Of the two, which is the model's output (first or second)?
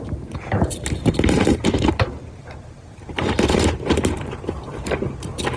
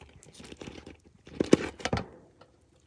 first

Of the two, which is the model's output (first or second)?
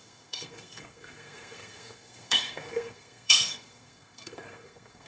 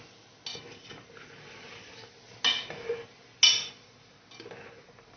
first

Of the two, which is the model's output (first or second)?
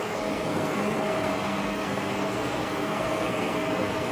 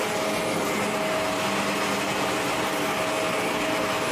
first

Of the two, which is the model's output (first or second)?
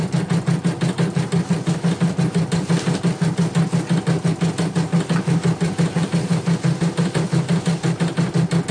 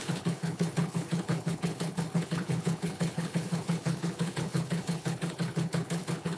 second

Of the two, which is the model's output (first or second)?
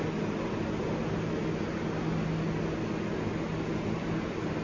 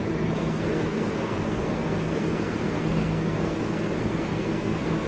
second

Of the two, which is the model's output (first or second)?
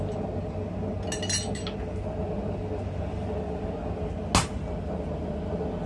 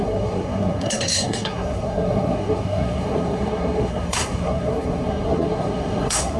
second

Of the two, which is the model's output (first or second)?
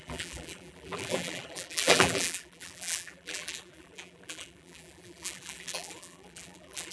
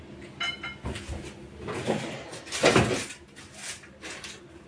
first